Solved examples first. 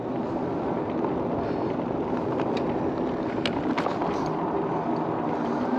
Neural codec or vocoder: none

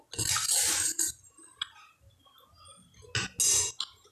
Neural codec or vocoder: none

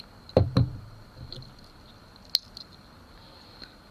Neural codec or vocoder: none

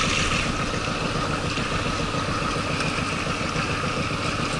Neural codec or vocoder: none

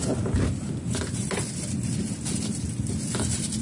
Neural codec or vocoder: none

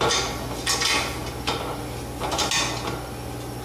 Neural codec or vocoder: none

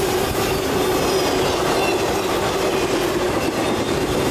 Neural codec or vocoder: none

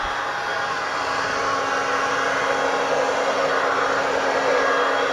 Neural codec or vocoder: none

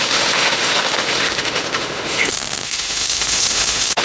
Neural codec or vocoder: autoencoder, DAC-VAE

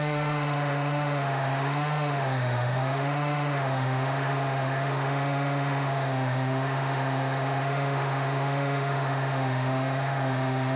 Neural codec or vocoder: autoencoder, DAC-VAE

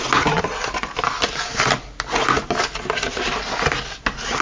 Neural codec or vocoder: none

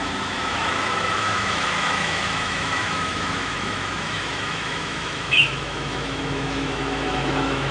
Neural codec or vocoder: autoencoder, DAC-VAE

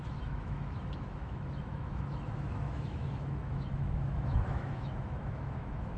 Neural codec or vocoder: autoencoder, DAC-VAE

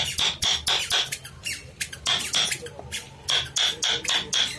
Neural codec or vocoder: none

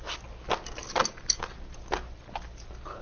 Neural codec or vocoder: none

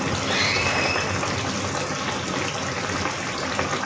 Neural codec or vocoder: none